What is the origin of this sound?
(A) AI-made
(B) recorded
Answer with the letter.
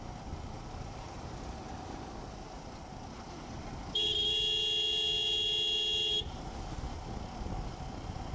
B